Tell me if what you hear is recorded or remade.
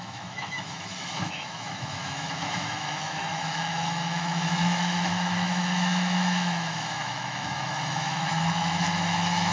remade